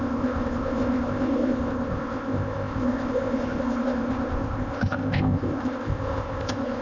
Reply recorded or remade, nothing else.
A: remade